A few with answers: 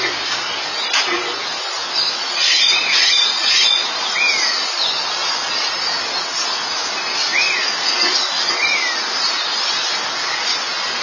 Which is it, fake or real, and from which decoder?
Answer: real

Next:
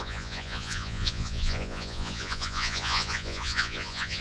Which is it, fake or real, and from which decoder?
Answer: fake, vocoder, Vocos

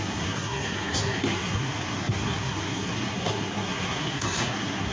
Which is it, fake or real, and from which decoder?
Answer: fake, codec, SNAC